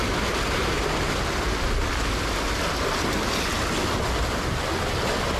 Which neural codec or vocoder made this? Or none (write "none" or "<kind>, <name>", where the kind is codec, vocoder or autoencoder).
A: none